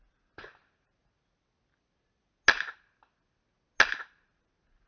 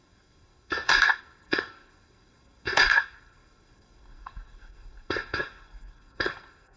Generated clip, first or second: second